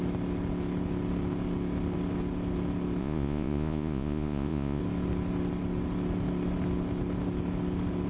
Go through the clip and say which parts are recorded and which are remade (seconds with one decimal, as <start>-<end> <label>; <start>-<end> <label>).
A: 0.0-3.0 recorded; 3.0-4.8 remade; 4.8-8.1 recorded